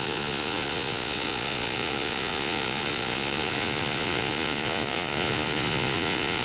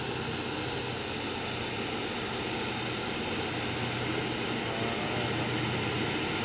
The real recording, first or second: second